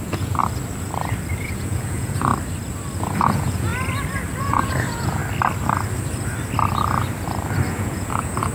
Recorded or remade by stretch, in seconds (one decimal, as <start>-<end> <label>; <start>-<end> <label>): 0.0-0.4 remade; 0.4-1.4 recorded; 1.4-2.3 remade; 2.3-3.0 recorded; 3.0-3.7 remade; 3.7-4.4 recorded; 4.4-5.2 remade; 5.2-7.7 recorded; 7.7-8.5 remade

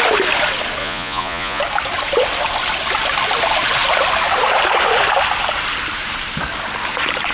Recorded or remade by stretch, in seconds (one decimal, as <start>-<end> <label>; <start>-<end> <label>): 0.0-0.8 recorded; 0.8-1.6 remade; 1.6-7.3 recorded

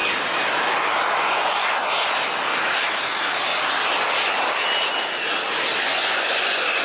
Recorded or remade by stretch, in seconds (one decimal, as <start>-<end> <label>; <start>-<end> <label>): 0.0-1.2 recorded; 1.2-1.8 remade; 1.8-5.9 recorded; 5.9-6.8 remade

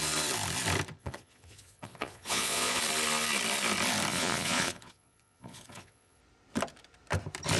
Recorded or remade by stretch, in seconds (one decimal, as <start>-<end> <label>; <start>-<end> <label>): 0.0-1.0 recorded; 1.0-2.8 remade; 2.8-4.1 recorded; 4.1-6.2 remade; 6.2-7.6 recorded

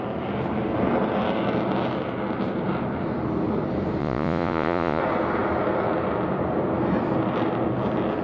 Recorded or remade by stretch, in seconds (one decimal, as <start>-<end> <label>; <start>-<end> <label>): 0.0-4.0 recorded; 4.0-5.0 remade; 5.0-8.2 recorded

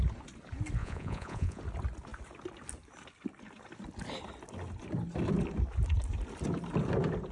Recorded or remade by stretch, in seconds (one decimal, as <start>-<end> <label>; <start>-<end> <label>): 0.0-0.8 recorded; 0.8-1.6 remade; 1.6-7.3 recorded